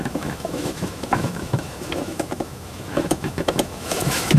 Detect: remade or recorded remade